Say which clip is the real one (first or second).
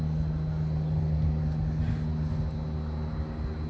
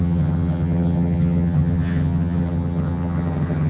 first